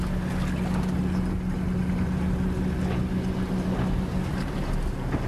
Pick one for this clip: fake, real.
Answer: real